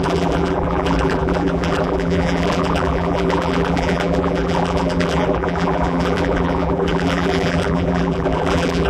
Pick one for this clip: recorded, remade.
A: remade